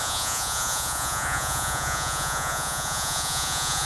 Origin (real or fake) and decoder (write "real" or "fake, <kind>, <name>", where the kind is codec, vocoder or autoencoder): fake, vocoder, Vocos